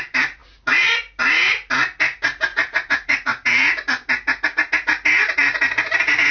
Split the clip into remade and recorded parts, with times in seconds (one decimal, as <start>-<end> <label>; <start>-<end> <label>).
0.0-2.5 recorded; 2.5-3.5 remade; 3.5-6.3 recorded